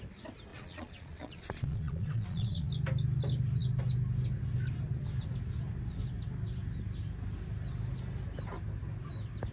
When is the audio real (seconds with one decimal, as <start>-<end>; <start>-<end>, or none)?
0.0-0.5; 2.7-9.5